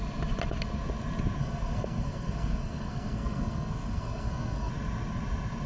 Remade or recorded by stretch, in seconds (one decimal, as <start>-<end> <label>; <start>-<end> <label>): 0.0-1.4 recorded; 1.4-4.7 remade; 4.7-5.7 recorded